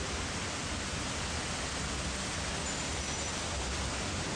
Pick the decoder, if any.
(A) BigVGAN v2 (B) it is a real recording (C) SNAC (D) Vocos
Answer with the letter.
B